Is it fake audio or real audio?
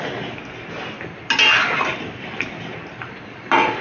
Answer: real